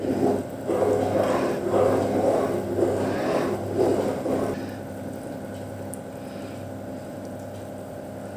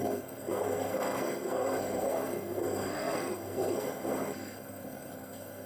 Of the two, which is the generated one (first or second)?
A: second